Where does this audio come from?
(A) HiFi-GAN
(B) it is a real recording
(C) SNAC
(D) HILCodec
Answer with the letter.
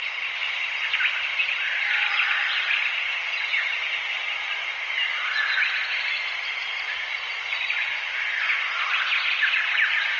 B